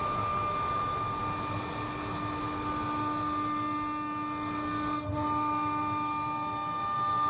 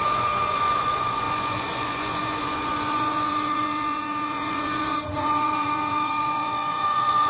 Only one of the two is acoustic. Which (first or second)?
first